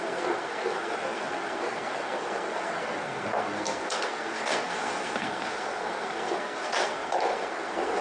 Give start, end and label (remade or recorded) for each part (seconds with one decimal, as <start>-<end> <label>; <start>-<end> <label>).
0.0-8.0 remade